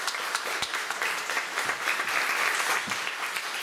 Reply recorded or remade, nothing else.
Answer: recorded